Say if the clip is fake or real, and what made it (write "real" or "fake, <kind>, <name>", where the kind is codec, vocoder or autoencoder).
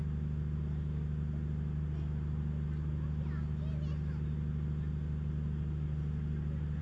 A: real